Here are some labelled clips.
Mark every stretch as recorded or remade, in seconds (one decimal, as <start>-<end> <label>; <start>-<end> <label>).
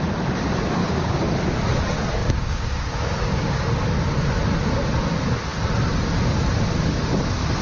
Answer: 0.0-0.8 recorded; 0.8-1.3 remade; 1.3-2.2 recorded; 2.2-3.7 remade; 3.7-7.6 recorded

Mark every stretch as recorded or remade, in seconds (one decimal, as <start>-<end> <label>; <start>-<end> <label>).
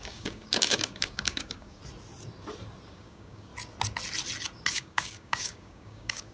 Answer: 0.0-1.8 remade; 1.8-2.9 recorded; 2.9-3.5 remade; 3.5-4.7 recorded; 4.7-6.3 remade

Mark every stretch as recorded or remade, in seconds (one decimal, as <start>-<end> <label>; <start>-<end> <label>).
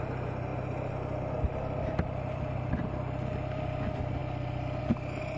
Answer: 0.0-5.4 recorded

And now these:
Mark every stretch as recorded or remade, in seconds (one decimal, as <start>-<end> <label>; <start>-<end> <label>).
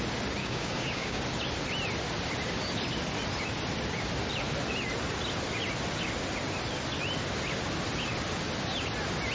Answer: 0.0-0.4 recorded; 0.4-1.2 remade; 1.2-9.3 recorded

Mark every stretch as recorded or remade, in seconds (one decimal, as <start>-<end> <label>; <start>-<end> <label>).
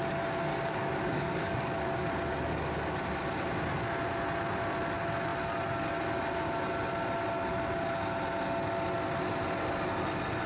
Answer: 0.0-0.5 recorded; 0.5-2.1 remade; 2.1-10.5 recorded